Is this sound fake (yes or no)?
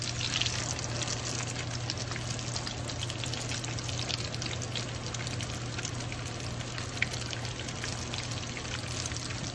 no